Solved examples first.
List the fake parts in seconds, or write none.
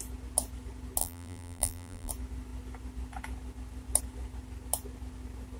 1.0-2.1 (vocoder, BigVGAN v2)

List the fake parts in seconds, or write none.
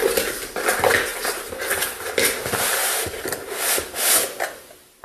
1.1-2.0 (vocoder, BigVGAN v2); 2.8-4.0